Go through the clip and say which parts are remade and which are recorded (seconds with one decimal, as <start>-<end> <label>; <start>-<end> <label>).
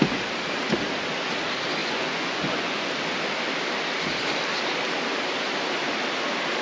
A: 0.0-1.8 recorded; 1.8-2.9 remade; 2.9-6.6 recorded